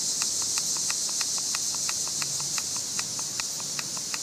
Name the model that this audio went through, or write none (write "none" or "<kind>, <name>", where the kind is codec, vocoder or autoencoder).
none